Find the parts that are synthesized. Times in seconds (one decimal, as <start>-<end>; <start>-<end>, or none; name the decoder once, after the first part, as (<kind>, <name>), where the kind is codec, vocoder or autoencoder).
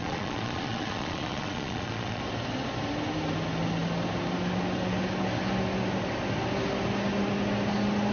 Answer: 0.0-2.2 (vocoder, Vocos)